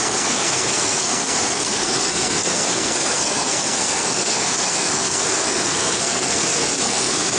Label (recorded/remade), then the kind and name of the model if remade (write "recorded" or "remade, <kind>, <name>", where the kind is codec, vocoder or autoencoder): remade, codec, SNAC